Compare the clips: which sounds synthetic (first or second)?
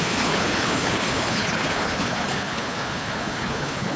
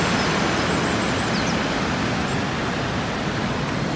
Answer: first